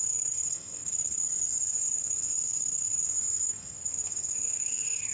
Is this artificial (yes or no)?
yes